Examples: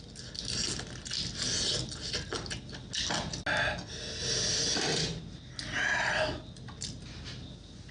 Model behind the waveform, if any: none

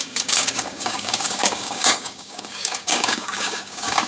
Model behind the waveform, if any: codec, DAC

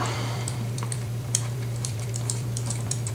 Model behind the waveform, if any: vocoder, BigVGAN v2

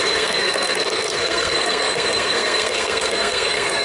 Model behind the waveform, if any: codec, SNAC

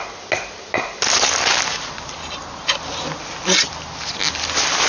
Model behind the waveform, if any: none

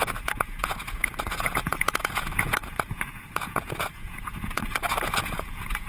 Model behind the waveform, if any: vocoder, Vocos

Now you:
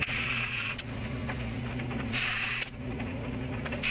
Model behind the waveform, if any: vocoder, Vocos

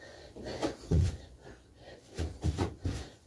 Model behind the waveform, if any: vocoder, Vocos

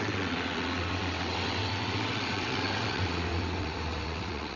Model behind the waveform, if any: vocoder, WaveNeXt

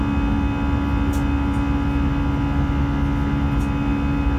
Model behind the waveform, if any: none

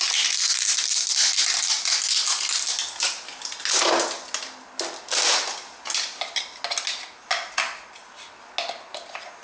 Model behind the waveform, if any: none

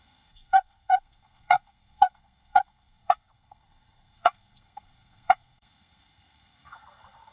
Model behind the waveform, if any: codec, SNAC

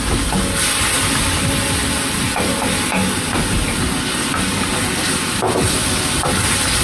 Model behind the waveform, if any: none